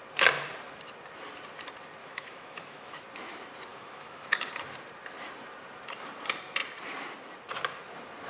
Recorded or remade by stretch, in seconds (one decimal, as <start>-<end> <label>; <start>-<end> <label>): 0.0-2.0 recorded; 2.0-3.0 remade; 3.0-3.7 recorded; 3.7-4.5 remade; 4.5-8.3 recorded